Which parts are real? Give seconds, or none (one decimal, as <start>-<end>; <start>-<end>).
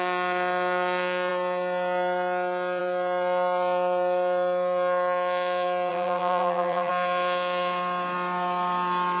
0.0-5.9; 6.9-9.2